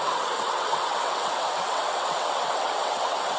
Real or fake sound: fake